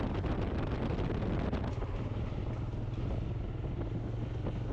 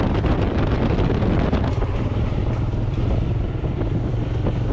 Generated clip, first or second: second